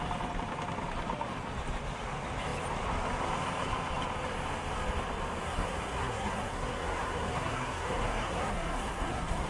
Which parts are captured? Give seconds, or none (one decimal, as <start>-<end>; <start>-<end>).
0.0-5.4

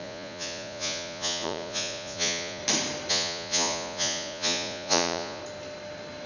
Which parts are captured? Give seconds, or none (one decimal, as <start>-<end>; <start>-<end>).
2.6-3.1; 5.4-6.3

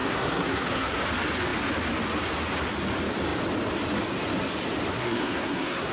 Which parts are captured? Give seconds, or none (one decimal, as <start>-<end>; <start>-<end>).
1.0-4.9

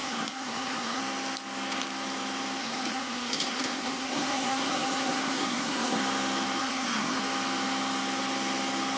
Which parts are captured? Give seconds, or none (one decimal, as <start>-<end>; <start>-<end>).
1.0-2.6; 6.0-6.6; 7.2-9.0